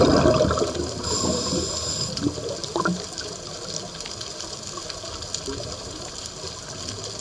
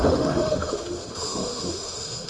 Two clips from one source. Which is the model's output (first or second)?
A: second